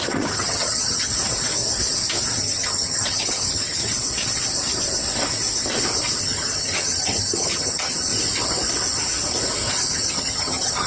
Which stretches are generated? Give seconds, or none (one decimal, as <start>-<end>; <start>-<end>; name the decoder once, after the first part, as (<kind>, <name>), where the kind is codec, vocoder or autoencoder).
0.0-1.1 (vocoder, HiFi-GAN); 2.4-3.8; 6.2-8.1; 9.7-10.9